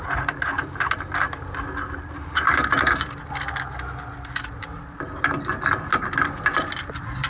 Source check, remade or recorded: recorded